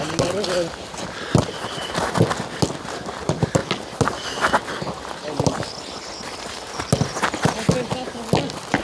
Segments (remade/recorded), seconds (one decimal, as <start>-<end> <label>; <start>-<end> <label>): 0.0-8.8 recorded